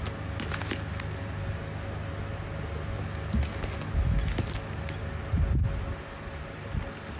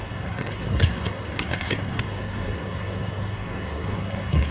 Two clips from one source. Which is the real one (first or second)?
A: first